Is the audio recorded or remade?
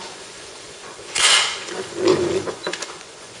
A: remade